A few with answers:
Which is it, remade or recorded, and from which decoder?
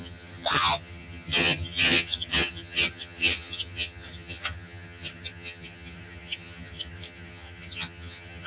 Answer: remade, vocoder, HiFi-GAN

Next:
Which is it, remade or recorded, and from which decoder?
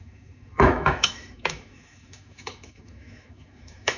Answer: remade, autoencoder, DAC-VAE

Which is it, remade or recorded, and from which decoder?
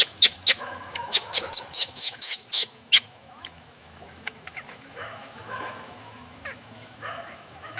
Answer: remade, autoencoder, DAC-VAE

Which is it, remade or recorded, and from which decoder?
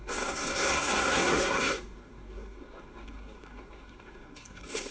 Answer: remade, codec, SNAC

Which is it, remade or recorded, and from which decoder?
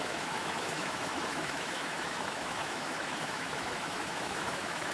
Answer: remade, autoencoder, DAC-VAE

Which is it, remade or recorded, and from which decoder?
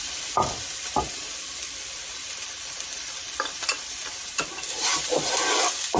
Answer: remade, vocoder, BigVGAN v2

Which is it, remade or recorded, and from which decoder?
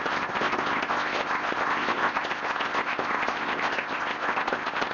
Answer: remade, codec, ZipCodec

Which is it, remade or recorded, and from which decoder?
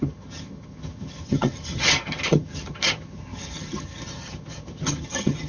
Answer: remade, vocoder, HiFi-GAN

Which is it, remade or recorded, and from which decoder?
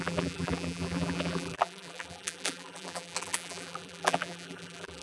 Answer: remade, vocoder, BigVGAN v2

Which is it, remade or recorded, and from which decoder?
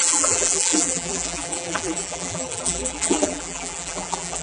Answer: remade, vocoder, BigVGAN v2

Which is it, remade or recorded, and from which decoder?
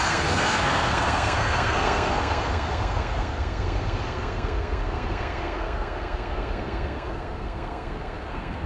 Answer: remade, codec, SNAC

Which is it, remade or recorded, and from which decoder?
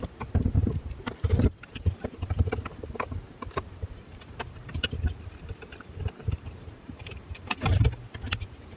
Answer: remade, vocoder, BigVGAN v2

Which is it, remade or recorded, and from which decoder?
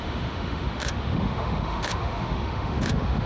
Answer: remade, autoencoder, DAC-VAE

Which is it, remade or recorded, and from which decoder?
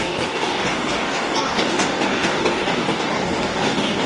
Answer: remade, codec, DAC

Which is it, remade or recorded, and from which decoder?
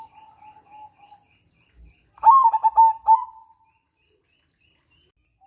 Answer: recorded